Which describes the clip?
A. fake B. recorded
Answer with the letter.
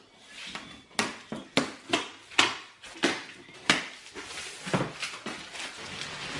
B